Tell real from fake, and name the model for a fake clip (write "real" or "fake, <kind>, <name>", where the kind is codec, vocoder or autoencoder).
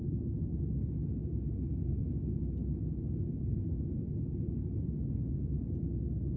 real